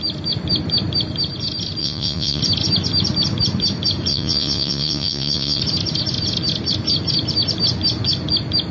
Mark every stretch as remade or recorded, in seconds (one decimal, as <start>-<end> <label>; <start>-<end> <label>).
0.0-1.8 recorded; 1.8-2.4 remade; 2.4-4.1 recorded; 4.1-5.6 remade; 5.6-8.7 recorded